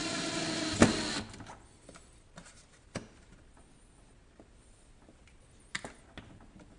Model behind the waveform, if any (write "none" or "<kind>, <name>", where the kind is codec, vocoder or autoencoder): none